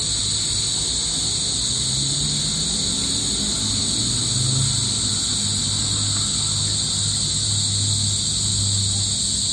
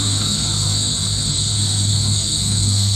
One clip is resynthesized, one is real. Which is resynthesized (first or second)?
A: second